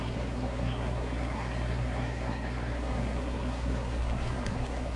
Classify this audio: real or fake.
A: fake